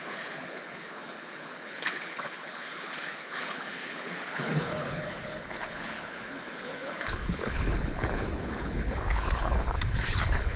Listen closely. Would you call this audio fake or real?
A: fake